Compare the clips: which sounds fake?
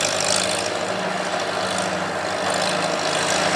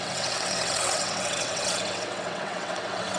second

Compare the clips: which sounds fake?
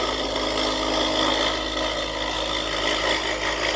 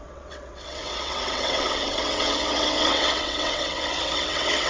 second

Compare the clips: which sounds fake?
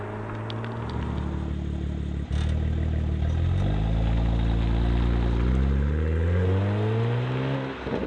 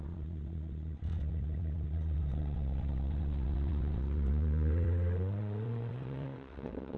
second